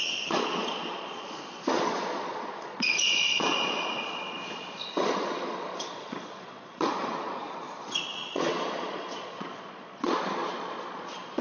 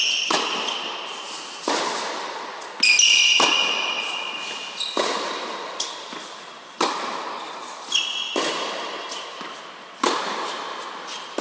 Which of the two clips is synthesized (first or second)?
first